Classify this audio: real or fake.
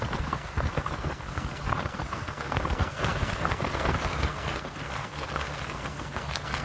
fake